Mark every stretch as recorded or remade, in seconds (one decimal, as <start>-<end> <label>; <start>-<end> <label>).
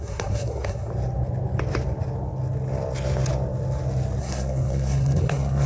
0.0-0.9 remade; 0.9-4.2 recorded; 4.2-5.7 remade